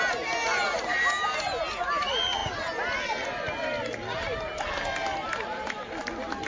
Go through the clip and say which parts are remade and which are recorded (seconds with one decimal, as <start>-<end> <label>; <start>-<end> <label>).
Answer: 0.0-6.5 recorded